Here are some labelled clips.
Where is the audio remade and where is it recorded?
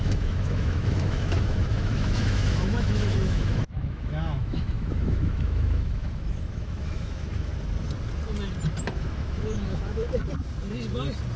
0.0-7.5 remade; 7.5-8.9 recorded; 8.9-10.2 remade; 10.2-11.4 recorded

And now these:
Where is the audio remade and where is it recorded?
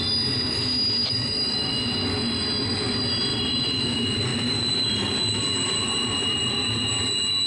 0.0-1.0 recorded; 1.0-1.8 remade; 1.8-3.3 recorded; 3.3-3.8 remade; 3.8-4.3 recorded; 4.3-5.4 remade; 5.4-7.5 recorded